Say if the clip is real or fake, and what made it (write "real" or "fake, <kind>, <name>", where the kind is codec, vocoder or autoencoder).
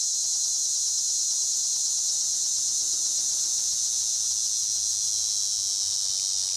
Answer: real